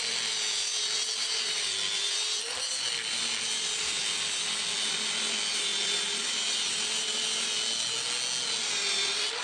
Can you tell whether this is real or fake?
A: real